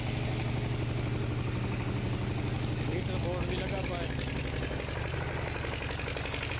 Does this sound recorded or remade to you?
recorded